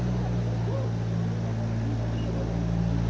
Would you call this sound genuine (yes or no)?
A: yes